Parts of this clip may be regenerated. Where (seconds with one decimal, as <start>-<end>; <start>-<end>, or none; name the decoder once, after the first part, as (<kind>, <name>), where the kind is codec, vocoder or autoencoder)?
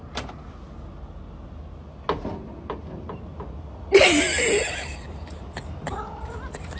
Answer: none